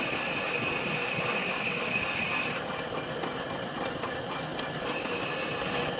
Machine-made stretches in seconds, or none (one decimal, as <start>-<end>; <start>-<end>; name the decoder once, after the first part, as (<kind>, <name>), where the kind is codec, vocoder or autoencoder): 1.4-2.0 (codec, DAC)